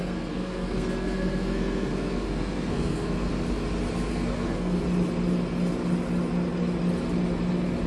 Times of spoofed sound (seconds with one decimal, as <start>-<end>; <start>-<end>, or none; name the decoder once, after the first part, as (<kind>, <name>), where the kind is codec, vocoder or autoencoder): 0.0-3.3 (codec, SNAC); 4.1-4.8